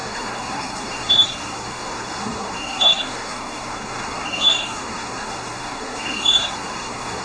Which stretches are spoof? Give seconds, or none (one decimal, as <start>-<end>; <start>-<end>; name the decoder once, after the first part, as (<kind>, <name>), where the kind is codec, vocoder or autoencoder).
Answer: 0.0-7.2 (codec, SNAC)

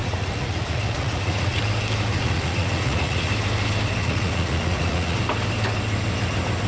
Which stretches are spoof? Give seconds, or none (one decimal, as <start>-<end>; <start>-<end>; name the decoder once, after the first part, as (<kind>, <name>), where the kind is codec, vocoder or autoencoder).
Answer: 0.0-1.6 (vocoder, Vocos); 2.1-3.3; 4.0-5.2

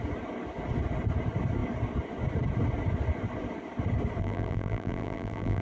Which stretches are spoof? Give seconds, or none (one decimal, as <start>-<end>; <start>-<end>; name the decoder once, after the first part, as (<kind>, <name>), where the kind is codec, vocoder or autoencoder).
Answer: 4.2-5.6 (vocoder, BigVGAN v2)

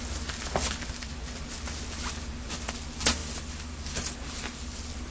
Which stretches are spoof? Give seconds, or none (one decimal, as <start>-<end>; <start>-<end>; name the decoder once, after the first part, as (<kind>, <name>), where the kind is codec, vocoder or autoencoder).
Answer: none

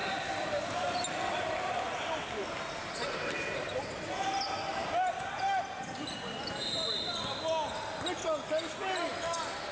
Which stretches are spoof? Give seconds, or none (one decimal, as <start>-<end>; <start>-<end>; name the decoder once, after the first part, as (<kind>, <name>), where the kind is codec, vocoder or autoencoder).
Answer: 0.0-1.7 (vocoder, BigVGAN v2)

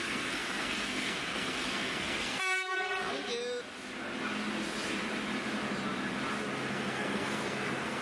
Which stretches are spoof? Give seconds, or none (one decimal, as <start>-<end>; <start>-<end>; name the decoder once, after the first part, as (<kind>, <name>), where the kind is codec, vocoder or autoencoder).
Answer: 0.0-3.2 (codec, SNAC); 6.7-8.0

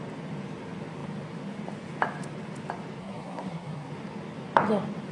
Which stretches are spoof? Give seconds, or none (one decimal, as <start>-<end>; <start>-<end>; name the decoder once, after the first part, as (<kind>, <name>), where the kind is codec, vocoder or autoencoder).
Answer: 3.0-3.9 (codec, SNAC)